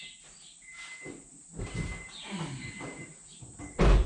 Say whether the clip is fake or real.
real